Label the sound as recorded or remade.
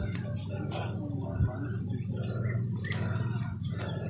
recorded